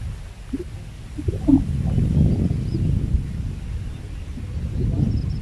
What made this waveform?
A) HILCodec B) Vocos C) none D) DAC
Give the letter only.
C